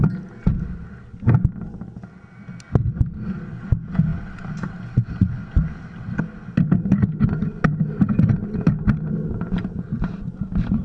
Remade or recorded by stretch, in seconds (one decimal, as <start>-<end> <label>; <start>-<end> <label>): 0.0-10.8 recorded